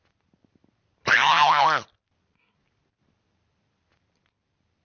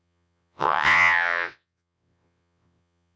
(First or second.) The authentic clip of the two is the first